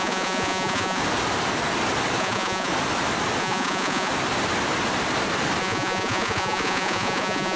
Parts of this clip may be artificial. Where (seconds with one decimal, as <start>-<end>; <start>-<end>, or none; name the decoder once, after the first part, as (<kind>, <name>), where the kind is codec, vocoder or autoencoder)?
0.0-1.0 (vocoder, Vocos); 2.2-2.7; 3.4-4.1; 5.6-7.6